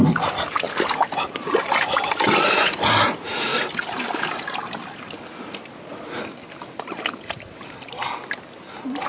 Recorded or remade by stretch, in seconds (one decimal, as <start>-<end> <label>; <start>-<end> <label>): 0.0-2.3 recorded; 2.3-3.5 remade; 3.5-7.6 recorded; 7.6-8.0 remade; 8.0-8.7 recorded; 8.7-9.1 remade

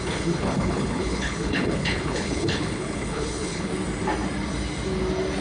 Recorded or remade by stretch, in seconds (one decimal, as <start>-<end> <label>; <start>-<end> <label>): 0.0-3.7 remade; 3.7-5.4 recorded

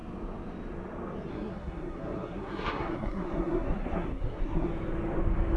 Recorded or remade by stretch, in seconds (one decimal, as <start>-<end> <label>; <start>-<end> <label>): 0.0-1.3 recorded; 1.3-4.7 remade; 4.7-5.6 recorded

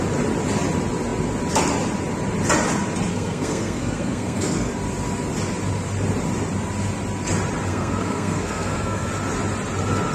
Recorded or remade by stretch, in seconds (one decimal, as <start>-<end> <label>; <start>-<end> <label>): 0.0-3.1 recorded; 3.1-4.7 remade; 4.7-7.7 recorded; 7.7-9.1 remade; 9.1-10.1 recorded